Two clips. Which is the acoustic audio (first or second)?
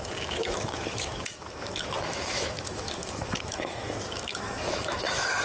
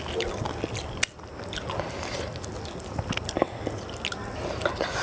second